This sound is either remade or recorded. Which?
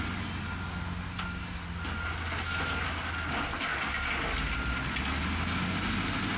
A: recorded